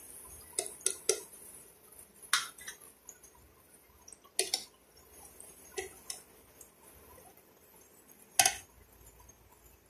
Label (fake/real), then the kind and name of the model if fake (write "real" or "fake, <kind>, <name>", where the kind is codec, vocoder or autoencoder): real